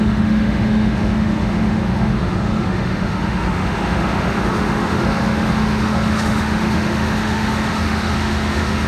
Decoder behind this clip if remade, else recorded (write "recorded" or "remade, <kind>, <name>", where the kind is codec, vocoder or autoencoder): remade, autoencoder, DAC-VAE